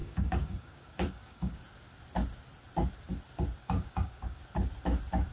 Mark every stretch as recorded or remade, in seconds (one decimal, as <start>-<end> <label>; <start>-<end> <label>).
0.0-1.6 remade; 1.6-3.6 recorded; 3.6-4.4 remade; 4.4-5.3 recorded